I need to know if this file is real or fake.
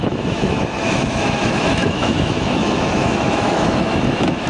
fake